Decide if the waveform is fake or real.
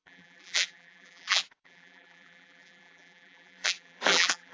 fake